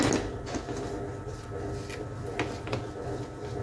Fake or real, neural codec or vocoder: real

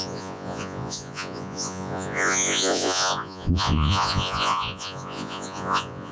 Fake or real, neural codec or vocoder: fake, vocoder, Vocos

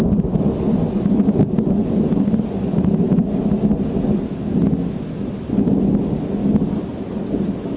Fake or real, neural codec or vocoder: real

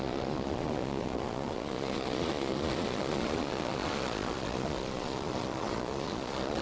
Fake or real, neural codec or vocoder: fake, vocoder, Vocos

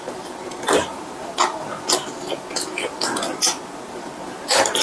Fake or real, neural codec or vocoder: real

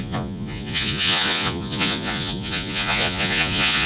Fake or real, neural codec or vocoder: fake, vocoder, Vocos